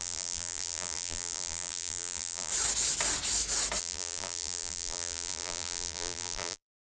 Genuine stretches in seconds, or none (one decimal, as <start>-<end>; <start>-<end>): 2.5-3.8